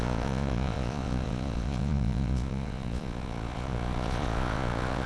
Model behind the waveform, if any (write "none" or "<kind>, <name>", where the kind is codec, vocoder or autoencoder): vocoder, Vocos